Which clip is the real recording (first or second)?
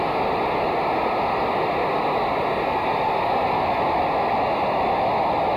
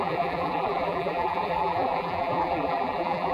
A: first